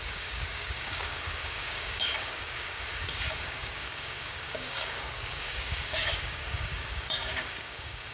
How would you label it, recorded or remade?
remade